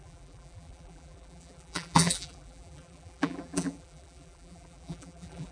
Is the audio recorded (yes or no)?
no